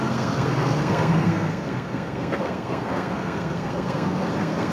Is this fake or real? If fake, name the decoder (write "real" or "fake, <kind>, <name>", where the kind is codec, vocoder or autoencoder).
fake, codec, SNAC